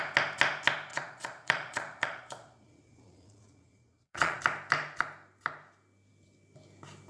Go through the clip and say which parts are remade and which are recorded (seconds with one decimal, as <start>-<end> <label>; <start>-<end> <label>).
0.0-0.9 recorded; 0.9-4.4 remade; 4.4-7.1 recorded